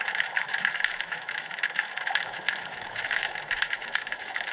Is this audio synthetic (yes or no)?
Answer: yes